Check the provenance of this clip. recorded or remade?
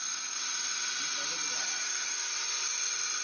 recorded